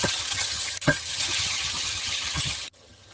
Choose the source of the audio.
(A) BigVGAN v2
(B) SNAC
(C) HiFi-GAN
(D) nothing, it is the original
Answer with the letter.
C